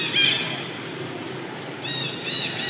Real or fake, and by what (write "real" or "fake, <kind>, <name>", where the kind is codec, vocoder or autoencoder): real